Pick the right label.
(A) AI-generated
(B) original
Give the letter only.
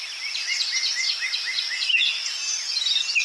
B